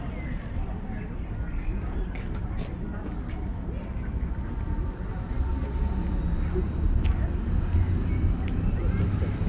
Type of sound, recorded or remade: recorded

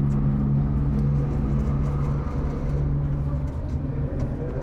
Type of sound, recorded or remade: recorded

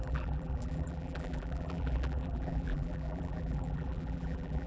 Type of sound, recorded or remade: remade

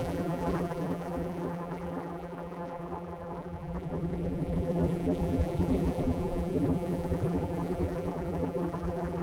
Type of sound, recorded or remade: remade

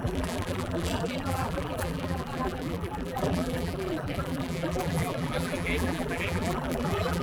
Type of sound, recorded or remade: remade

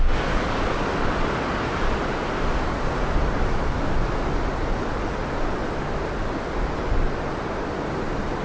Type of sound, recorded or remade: recorded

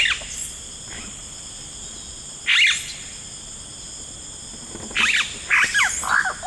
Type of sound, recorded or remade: recorded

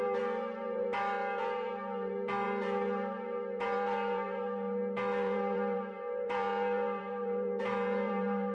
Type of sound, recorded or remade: remade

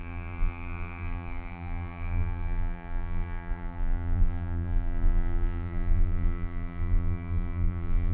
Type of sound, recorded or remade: remade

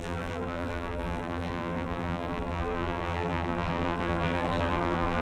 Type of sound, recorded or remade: remade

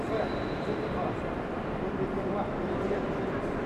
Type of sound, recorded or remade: remade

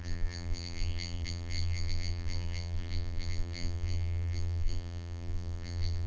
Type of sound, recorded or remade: remade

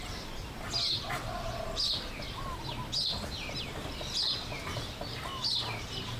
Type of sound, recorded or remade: recorded